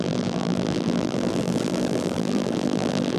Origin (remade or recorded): remade